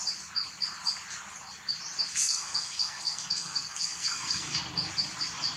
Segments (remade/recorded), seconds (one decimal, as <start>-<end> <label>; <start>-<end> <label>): 0.0-2.1 recorded; 2.1-4.6 remade; 4.6-5.6 recorded